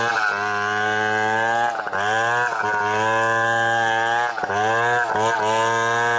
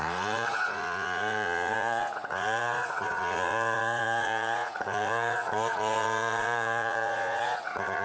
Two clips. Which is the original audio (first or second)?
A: first